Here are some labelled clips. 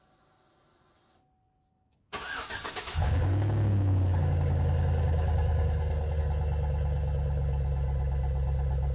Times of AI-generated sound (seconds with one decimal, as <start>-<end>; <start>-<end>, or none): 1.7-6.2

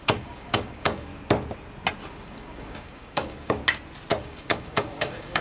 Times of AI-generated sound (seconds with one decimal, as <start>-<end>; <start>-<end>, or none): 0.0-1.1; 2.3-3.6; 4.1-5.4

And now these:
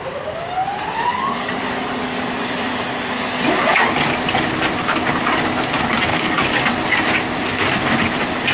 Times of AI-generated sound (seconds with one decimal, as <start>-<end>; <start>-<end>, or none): 1.1-2.2; 6.1-6.7

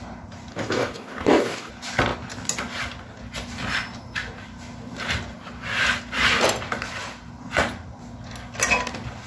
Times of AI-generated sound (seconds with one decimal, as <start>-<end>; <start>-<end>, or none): 0.5-1.7

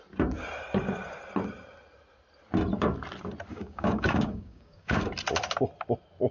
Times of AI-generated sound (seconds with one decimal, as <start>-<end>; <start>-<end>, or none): 3.5-5.1